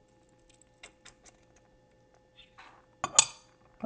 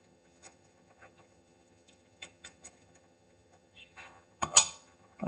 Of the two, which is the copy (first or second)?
second